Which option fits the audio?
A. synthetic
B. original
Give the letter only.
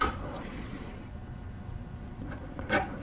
A